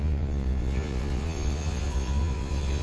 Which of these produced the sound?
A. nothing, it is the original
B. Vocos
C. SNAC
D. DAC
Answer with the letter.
B